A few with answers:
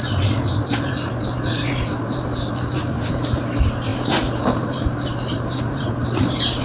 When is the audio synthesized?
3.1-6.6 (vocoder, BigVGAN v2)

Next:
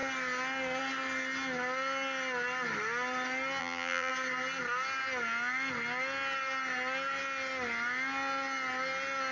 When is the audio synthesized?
3.6-4.1 (vocoder, BigVGAN v2)

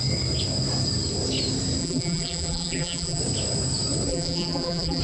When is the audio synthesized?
1.8-3.2 (vocoder, BigVGAN v2); 4.1-5.0